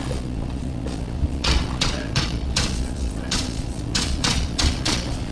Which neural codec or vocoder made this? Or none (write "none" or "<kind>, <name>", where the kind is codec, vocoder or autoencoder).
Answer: vocoder, Vocos